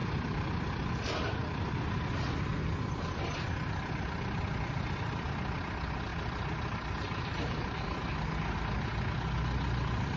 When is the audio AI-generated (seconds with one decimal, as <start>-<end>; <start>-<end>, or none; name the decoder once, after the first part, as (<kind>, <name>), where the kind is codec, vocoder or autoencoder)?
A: 0.0-1.6 (vocoder, BigVGAN v2); 2.5-5.6; 6.1-8.0